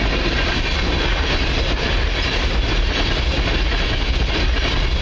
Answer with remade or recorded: recorded